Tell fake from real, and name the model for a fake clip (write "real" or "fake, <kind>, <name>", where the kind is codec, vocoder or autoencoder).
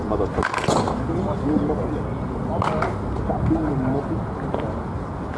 real